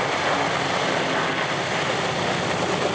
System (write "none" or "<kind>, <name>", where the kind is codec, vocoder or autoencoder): none